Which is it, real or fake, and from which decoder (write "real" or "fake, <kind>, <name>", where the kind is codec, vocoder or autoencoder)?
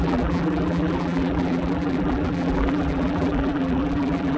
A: fake, vocoder, BigVGAN v2